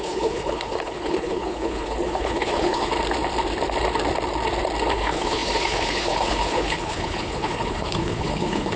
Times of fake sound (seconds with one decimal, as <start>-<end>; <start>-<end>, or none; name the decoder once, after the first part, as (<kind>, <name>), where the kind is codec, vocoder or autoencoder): 0.0-2.9 (codec, HILCodec); 4.9-8.8